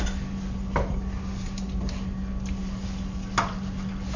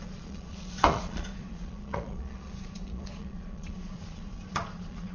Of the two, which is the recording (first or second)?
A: first